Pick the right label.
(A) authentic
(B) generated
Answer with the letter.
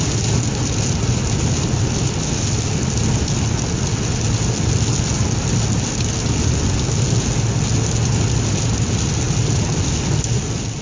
A